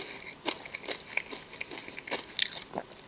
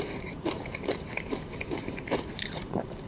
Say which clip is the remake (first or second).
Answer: second